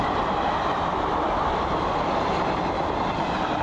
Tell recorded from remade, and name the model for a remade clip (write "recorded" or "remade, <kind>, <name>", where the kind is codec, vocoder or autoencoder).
recorded